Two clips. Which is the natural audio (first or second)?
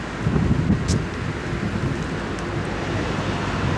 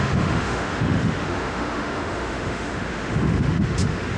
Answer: first